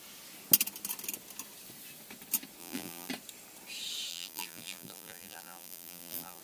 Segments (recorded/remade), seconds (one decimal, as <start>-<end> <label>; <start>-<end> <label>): 0.0-2.6 recorded; 2.6-3.1 remade; 3.1-4.1 recorded; 4.1-6.4 remade